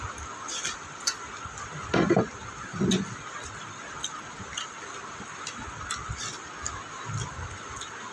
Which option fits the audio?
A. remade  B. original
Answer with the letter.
B